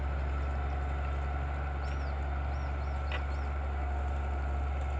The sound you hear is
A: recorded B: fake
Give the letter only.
A